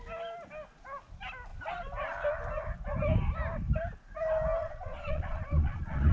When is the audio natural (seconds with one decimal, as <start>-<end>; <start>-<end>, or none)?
0.0-4.6